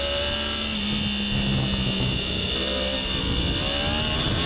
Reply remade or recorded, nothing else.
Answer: recorded